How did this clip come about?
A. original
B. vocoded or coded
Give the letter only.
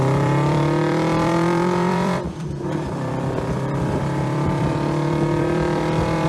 B